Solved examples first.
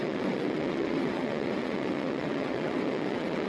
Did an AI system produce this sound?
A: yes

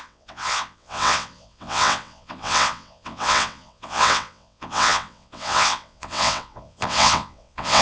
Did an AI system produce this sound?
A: yes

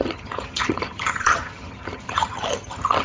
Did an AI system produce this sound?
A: yes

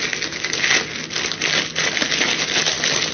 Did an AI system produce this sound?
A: no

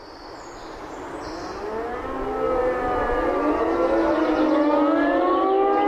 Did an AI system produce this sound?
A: no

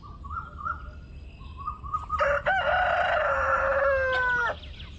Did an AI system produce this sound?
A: no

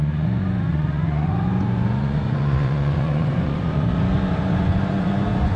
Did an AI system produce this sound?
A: yes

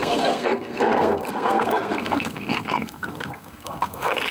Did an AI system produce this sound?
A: yes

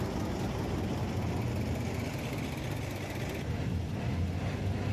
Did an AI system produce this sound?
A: no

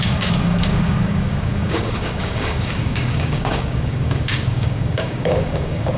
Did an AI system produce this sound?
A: yes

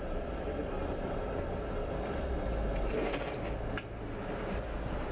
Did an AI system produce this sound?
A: no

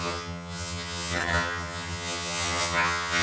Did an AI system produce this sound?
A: yes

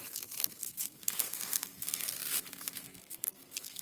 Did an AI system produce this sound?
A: yes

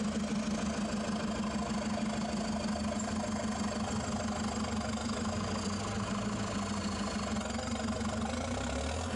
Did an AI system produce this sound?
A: no